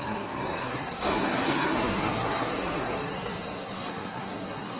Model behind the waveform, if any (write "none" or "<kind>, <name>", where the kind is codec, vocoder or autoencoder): codec, SNAC